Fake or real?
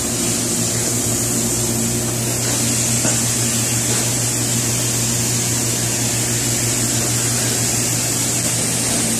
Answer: real